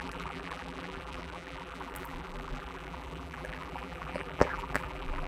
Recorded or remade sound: remade